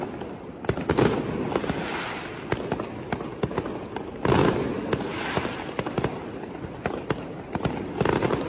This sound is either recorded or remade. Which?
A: recorded